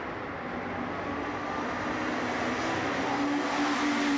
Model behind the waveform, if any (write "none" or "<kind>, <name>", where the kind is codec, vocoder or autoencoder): none